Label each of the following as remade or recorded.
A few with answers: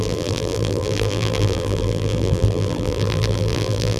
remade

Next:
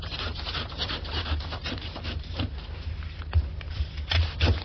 remade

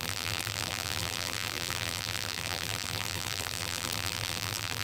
remade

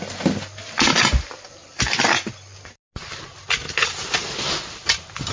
recorded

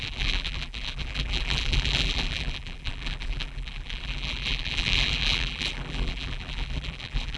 remade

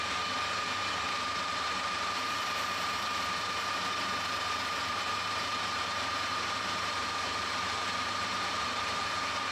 remade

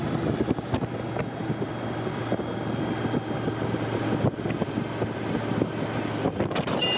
recorded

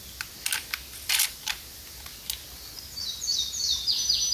recorded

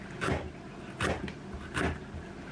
recorded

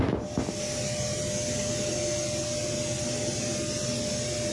recorded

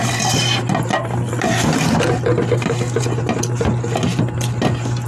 recorded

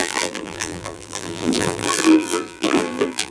remade